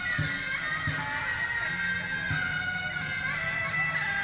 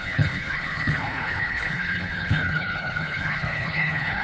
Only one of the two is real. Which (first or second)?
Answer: first